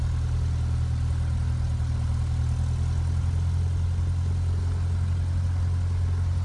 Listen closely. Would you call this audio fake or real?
real